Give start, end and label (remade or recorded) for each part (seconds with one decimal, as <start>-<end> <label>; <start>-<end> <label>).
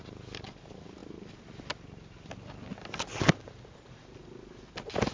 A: 0.0-5.1 recorded